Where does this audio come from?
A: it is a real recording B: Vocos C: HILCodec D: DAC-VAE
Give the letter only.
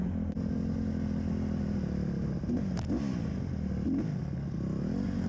A